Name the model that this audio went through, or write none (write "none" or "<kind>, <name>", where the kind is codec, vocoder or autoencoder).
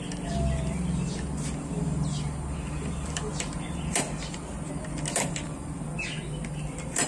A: none